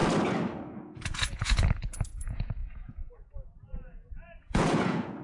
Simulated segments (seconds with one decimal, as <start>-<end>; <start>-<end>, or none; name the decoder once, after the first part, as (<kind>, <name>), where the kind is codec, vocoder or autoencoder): 0.8-5.2 (vocoder, Vocos)